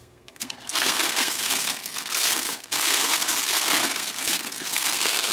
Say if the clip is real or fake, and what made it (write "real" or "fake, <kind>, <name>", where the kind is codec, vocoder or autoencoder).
fake, codec, SNAC